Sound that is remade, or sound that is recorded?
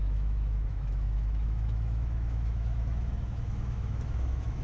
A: remade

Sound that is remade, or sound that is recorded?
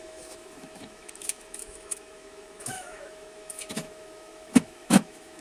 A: remade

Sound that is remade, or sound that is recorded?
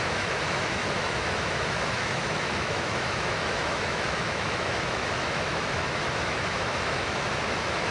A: remade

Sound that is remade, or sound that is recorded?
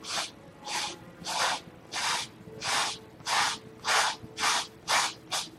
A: recorded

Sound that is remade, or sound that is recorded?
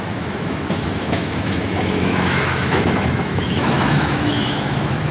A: remade